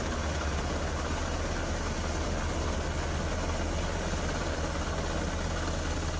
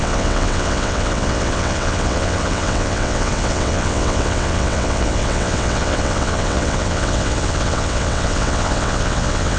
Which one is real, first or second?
first